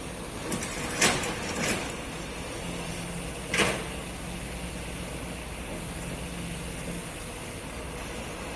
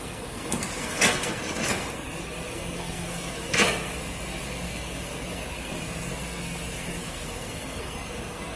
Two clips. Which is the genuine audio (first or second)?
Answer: first